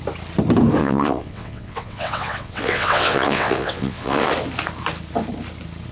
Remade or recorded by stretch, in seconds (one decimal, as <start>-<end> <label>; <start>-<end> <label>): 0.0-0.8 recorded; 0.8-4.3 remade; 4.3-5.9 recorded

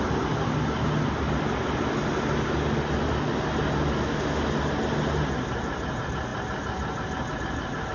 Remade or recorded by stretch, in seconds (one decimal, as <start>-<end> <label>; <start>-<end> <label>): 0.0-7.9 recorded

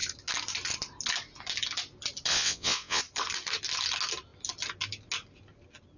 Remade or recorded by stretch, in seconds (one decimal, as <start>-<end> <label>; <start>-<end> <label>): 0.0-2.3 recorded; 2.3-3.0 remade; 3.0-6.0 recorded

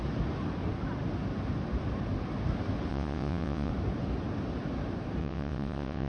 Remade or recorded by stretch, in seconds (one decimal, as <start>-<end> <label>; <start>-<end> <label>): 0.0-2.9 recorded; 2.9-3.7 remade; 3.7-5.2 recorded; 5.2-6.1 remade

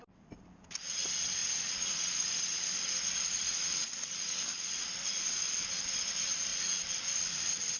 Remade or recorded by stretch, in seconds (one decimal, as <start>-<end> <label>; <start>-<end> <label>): 0.0-7.8 recorded

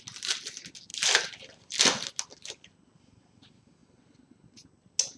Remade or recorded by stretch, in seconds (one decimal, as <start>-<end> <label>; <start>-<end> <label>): 0.0-5.2 recorded